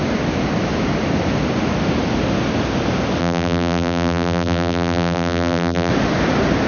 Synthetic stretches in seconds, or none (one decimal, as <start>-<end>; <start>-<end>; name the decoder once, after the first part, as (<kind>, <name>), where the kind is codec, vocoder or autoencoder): 3.2-5.9 (vocoder, BigVGAN v2)